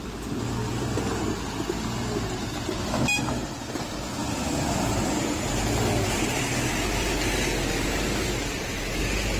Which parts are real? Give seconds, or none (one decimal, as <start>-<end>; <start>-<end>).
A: 0.0-4.2; 5.2-9.4